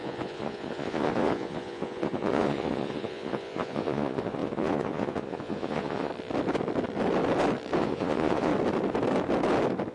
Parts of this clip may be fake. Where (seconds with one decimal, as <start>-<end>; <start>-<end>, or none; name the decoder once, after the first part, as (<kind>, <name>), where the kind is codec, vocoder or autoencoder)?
0.0-6.1 (vocoder, Vocos); 7.8-8.5